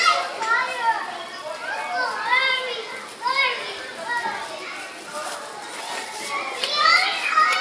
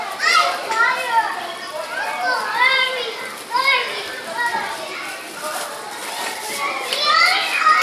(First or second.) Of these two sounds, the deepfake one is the second